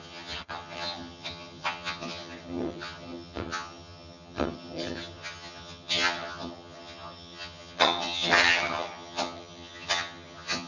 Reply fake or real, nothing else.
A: fake